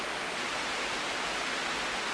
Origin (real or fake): real